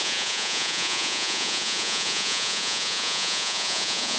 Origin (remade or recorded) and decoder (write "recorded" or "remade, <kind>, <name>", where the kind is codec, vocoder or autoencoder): remade, vocoder, Vocos